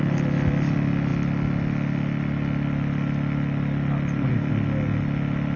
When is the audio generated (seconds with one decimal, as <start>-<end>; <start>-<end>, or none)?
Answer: none